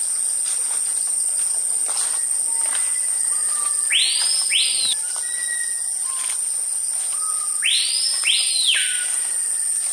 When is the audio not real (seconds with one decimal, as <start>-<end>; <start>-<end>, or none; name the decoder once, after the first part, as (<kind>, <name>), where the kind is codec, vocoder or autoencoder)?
none